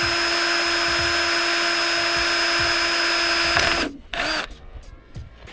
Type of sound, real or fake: real